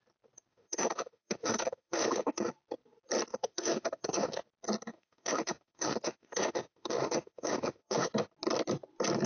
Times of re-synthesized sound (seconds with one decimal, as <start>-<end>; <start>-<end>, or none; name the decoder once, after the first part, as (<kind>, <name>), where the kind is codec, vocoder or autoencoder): 0.5-2.5 (autoencoder, DAC-VAE); 3.3-4.4; 4.9-8.1